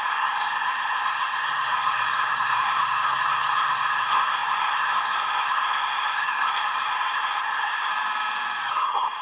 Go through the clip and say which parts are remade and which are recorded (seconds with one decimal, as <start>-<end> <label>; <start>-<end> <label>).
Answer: 0.0-7.9 remade; 7.9-8.7 recorded; 8.7-9.2 remade